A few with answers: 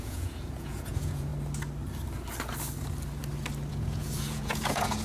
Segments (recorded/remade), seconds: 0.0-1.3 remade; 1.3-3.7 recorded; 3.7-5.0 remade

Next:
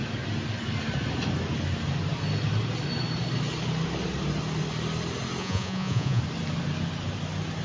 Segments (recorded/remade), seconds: 0.0-5.4 recorded; 5.4-6.2 remade; 6.2-7.6 recorded